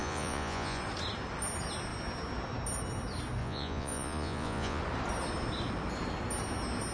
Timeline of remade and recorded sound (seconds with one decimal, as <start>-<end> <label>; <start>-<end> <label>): 0.0-0.8 remade; 0.8-3.4 recorded; 3.4-4.8 remade; 4.8-6.9 recorded